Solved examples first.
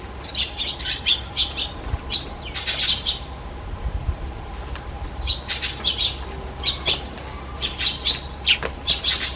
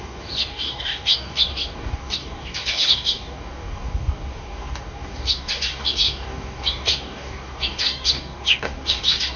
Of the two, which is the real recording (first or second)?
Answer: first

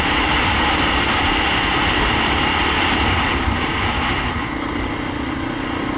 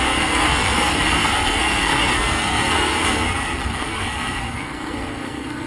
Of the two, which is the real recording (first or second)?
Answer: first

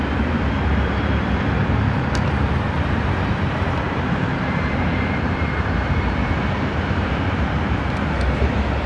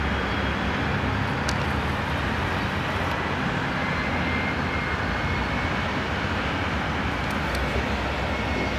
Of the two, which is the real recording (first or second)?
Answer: second